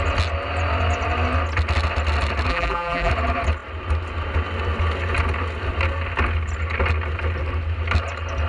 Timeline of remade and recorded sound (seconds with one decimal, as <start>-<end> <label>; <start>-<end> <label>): 0.0-2.5 recorded; 2.5-3.1 remade; 3.1-8.5 recorded